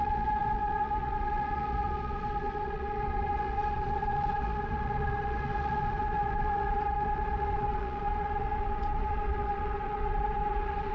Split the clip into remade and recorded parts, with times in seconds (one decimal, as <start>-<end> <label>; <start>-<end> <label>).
0.0-10.9 remade